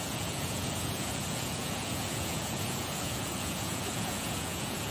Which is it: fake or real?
fake